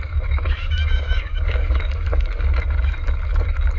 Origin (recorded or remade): remade